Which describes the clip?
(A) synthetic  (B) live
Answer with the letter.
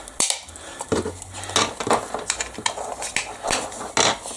B